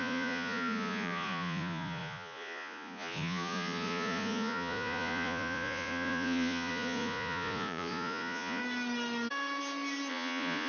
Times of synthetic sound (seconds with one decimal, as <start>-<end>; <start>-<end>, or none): 0.0-8.6; 10.1-10.7